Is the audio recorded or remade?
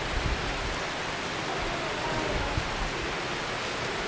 recorded